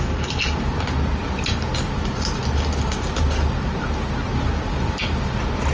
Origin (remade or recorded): recorded